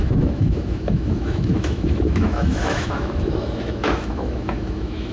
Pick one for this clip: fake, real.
fake